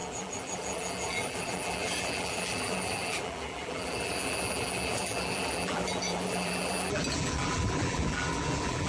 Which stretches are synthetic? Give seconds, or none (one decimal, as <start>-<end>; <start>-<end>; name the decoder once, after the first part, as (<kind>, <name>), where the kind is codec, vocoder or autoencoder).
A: 0.0-8.9 (vocoder, BigVGAN v2)